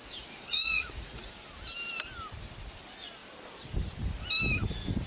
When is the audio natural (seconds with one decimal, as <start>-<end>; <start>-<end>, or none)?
1.3-5.1